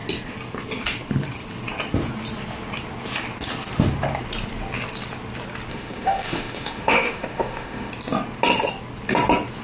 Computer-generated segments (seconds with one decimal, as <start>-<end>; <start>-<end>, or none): 5.7-7.9